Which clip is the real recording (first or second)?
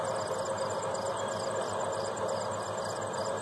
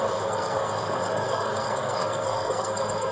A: first